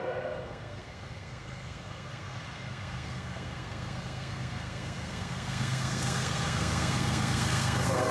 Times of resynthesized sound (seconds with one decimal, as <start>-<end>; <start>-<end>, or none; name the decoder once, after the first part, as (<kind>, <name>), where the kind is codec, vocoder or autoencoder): 0.0-8.1 (codec, SNAC)